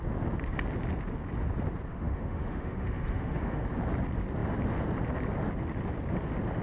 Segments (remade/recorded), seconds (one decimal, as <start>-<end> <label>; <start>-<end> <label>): 0.0-1.9 recorded; 1.9-3.7 remade; 3.7-6.6 recorded